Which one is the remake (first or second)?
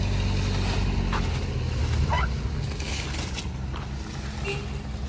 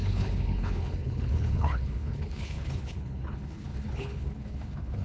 second